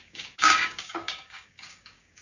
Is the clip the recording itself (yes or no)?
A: no